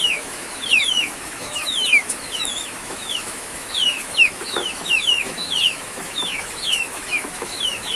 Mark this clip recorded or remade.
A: remade